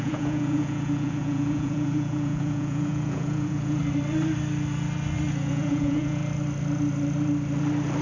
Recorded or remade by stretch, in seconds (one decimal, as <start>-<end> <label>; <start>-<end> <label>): 0.0-3.8 remade; 3.8-5.5 recorded; 5.5-6.2 remade; 6.2-8.0 recorded